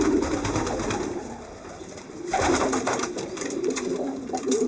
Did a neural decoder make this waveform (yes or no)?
yes